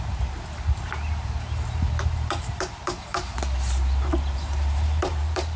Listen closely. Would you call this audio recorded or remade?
remade